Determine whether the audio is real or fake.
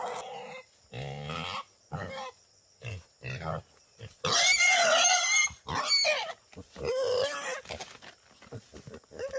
real